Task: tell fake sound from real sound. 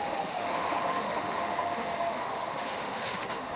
fake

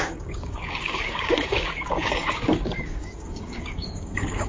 fake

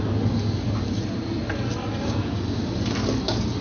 real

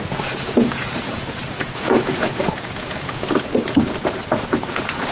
fake